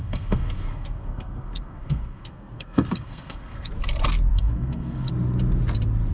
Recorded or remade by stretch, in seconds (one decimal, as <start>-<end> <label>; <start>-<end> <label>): 0.0-3.7 remade; 3.7-4.3 recorded; 4.3-5.1 remade; 5.1-6.1 recorded